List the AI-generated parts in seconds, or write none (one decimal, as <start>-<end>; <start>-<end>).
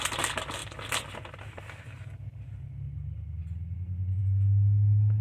none